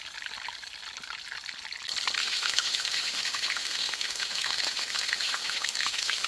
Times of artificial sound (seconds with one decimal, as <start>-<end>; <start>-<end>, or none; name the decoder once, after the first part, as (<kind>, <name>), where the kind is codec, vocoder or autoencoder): 2.2-6.3 (autoencoder, DAC-VAE)